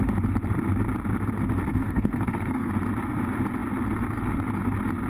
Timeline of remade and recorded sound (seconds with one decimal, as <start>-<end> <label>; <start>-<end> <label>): 0.0-1.7 recorded; 1.7-2.7 remade; 2.7-5.1 recorded